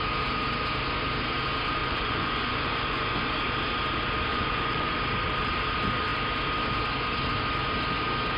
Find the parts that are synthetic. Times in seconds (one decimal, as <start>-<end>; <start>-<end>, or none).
1.8-3.2; 4.3-4.9